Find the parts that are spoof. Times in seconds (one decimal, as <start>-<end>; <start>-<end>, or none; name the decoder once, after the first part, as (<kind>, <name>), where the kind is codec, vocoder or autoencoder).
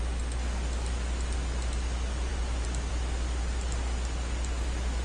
none